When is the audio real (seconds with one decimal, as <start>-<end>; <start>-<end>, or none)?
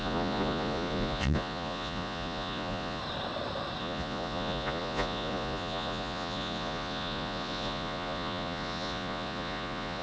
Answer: 3.0-3.8